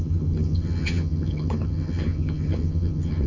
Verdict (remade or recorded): remade